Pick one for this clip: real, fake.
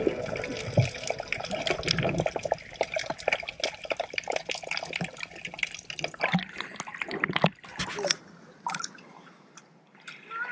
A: real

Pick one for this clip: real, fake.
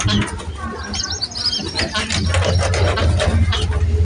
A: real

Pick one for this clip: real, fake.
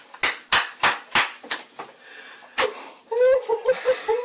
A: real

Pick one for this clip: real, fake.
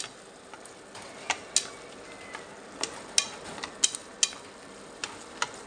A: real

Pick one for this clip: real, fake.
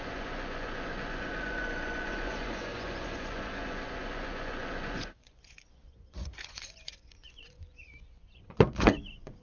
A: fake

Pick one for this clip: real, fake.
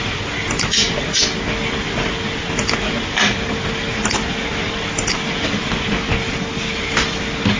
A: real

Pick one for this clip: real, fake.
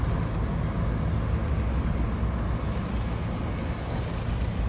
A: real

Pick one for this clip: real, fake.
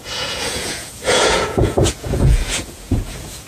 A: fake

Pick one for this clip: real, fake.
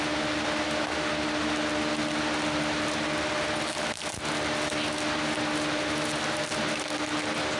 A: real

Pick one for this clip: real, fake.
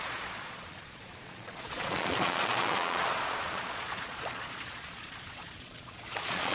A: fake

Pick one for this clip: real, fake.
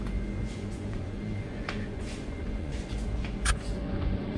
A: fake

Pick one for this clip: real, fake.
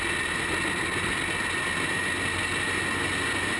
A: real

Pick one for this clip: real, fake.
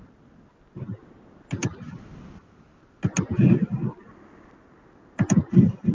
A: real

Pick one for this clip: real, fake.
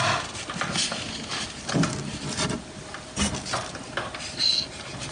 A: real